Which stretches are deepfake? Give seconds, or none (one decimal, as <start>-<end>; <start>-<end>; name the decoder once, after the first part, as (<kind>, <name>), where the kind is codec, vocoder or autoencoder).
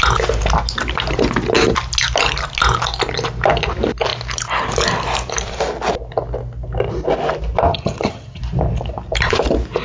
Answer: 7.7-8.4 (vocoder, HiFi-GAN)